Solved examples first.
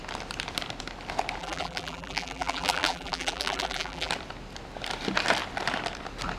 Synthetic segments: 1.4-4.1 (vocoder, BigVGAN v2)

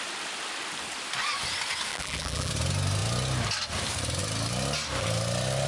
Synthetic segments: 1.9-2.5 (vocoder, BigVGAN v2)

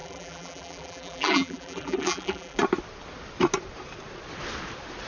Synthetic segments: 0.0-2.6 (vocoder, BigVGAN v2)

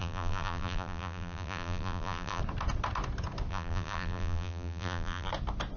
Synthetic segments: 0.0-2.4 (vocoder, BigVGAN v2); 3.5-5.3

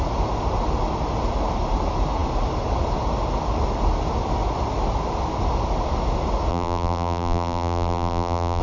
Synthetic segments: 6.5-8.6 (vocoder, BigVGAN v2)